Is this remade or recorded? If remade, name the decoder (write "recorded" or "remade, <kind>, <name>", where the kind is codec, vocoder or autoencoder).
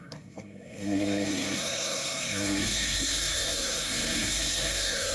remade, codec, SNAC